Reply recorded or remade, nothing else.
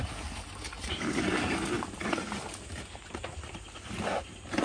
recorded